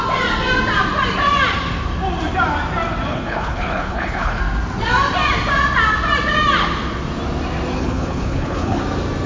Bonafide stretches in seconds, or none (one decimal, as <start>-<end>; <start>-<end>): 0.0-3.1; 4.4-7.8; 8.8-9.3